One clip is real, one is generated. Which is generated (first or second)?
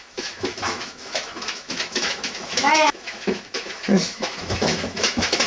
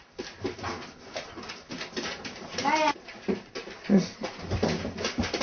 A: first